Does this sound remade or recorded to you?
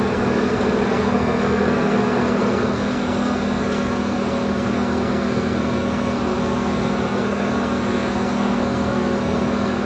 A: remade